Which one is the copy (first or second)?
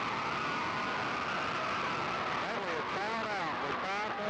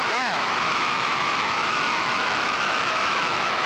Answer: second